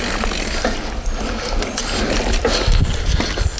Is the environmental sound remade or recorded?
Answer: recorded